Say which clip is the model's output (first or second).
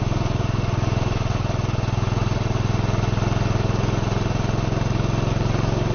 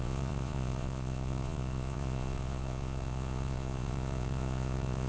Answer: second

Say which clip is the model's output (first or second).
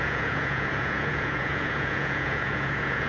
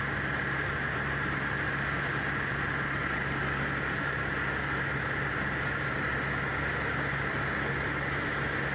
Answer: first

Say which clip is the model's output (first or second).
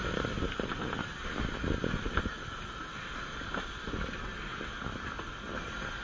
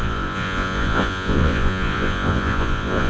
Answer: second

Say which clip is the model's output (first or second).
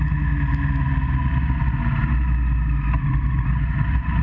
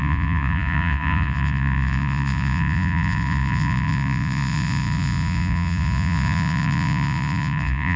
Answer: second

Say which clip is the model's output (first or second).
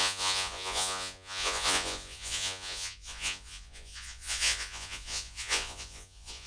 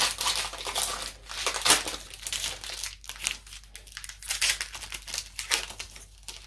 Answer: first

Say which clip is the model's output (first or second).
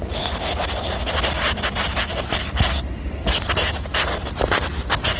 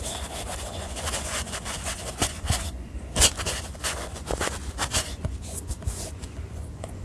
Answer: second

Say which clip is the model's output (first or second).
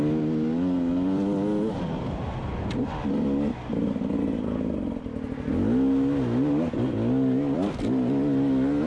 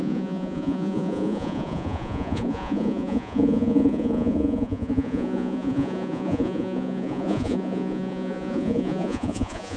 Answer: second